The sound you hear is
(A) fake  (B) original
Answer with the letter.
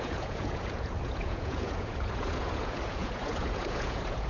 A